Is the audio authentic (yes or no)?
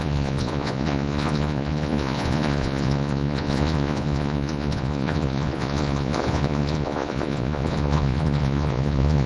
no